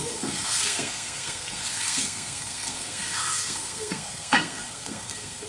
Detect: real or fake fake